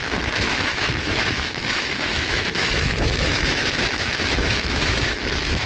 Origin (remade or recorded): remade